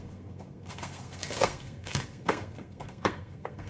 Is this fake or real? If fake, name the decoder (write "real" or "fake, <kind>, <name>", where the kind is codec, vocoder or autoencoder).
fake, codec, SNAC